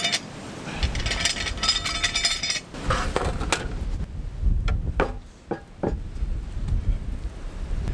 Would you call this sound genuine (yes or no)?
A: yes